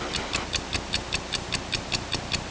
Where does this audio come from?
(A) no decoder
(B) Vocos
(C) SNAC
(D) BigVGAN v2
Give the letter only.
A